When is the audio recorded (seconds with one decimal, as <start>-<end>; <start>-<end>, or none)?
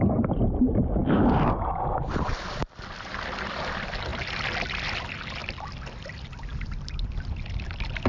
0.0-8.1